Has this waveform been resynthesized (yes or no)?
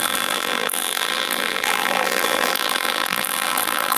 yes